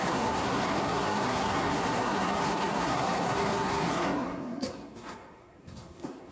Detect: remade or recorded remade